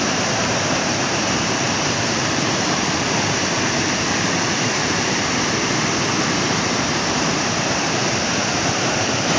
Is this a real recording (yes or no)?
no